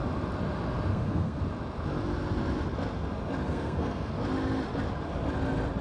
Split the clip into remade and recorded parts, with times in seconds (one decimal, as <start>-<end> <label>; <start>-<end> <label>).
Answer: 0.0-0.9 recorded; 0.9-1.4 remade; 1.4-3.5 recorded; 3.5-4.1 remade; 4.1-5.8 recorded